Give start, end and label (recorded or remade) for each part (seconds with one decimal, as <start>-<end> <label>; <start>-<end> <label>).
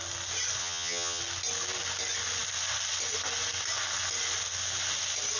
0.0-0.6 recorded; 0.6-1.2 remade; 1.2-5.4 recorded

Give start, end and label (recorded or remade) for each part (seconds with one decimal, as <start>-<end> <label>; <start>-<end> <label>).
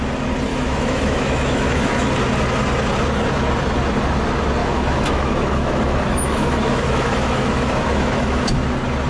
0.0-0.5 recorded; 0.5-2.1 remade; 2.1-4.6 recorded; 4.6-8.5 remade; 8.5-9.1 recorded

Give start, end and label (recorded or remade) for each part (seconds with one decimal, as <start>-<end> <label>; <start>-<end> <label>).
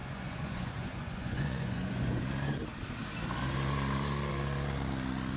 0.0-2.2 remade; 2.2-5.4 recorded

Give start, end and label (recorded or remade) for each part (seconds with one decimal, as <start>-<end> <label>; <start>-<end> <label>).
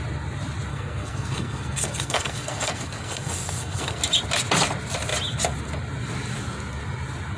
0.0-0.7 recorded; 0.7-4.0 remade; 4.0-7.4 recorded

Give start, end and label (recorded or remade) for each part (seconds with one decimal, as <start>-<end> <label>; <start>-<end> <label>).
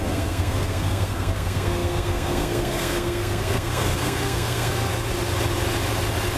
0.0-4.9 remade; 4.9-6.4 recorded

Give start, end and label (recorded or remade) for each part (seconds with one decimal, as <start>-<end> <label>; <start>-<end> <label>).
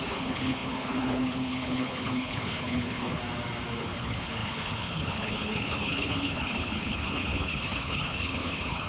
0.0-3.2 remade; 3.2-3.8 recorded; 3.8-8.9 remade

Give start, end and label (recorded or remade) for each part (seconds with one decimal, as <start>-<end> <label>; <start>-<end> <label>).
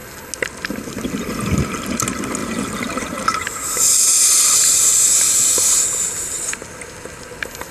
0.0-2.4 recorded; 2.4-4.1 remade; 4.1-7.7 recorded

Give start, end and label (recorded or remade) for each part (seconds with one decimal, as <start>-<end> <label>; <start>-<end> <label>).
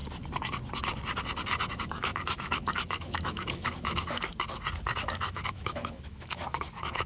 0.0-1.7 recorded; 1.7-4.3 remade; 4.3-5.0 recorded; 5.0-7.1 remade